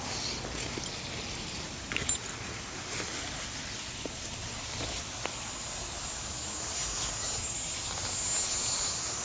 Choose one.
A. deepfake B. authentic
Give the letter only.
B